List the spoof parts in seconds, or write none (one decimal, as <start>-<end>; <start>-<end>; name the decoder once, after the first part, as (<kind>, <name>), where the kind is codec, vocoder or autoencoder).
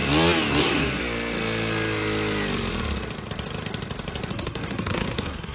0.6-1.0 (codec, SNAC); 4.3-5.5